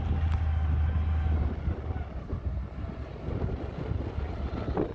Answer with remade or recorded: recorded